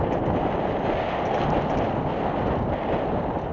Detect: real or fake real